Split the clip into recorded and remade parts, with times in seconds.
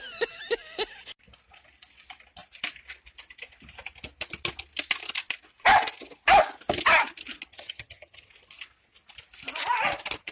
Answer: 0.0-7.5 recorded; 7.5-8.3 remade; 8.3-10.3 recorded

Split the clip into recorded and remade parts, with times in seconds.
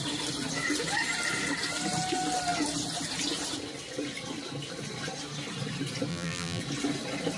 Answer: 0.0-6.1 recorded; 6.1-6.6 remade; 6.6-7.4 recorded